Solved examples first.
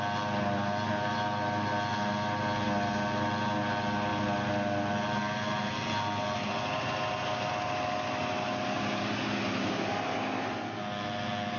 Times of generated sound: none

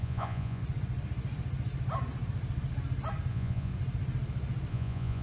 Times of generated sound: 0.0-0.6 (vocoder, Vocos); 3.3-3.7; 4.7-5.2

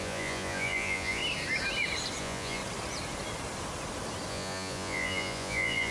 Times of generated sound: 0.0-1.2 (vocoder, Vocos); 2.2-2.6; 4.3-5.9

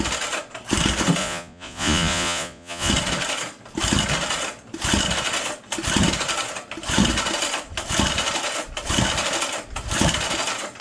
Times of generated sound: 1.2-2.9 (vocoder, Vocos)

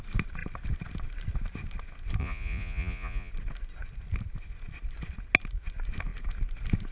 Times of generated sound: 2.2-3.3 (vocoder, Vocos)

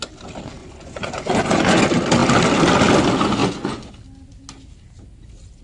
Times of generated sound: 0.6-1.8 (vocoder, Vocos); 3.4-3.9

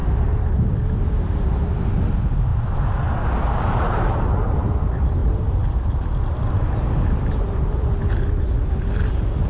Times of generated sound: none

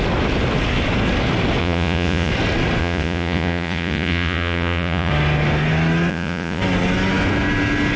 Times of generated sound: 1.6-2.3 (vocoder, Vocos); 2.8-5.1; 6.1-6.6